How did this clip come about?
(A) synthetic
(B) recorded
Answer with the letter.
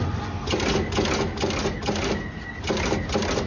B